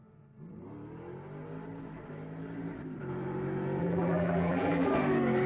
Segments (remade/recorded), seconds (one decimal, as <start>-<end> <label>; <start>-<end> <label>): 0.0-3.8 recorded; 3.8-4.9 remade; 4.9-5.5 recorded